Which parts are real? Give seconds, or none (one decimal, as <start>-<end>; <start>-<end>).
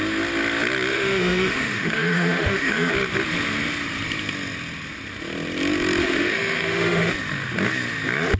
0.0-0.9; 2.9-6.0; 7.1-8.4